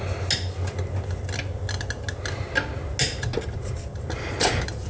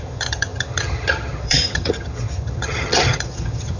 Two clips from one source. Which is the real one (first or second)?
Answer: first